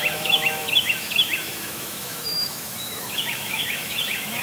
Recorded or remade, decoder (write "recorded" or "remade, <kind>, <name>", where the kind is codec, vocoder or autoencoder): remade, autoencoder, DAC-VAE